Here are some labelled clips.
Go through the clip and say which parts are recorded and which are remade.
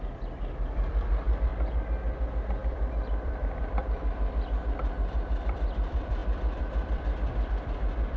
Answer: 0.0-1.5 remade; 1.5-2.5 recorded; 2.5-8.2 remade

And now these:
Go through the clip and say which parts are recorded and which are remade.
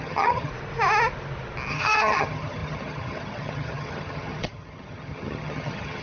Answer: 0.0-0.5 remade; 0.5-1.7 recorded; 1.7-6.0 remade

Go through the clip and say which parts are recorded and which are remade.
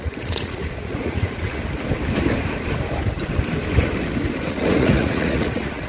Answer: 0.0-1.6 remade; 1.6-4.5 recorded; 4.5-5.9 remade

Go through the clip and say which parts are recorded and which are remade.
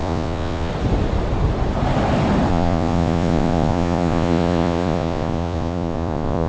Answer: 0.0-0.7 remade; 0.7-2.5 recorded; 2.5-6.5 remade